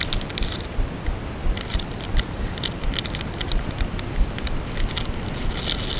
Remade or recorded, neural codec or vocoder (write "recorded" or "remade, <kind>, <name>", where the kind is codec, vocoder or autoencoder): recorded